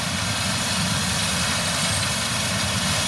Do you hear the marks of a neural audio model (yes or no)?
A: yes